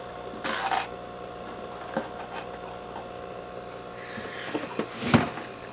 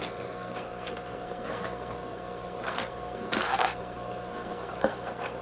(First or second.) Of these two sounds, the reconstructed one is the second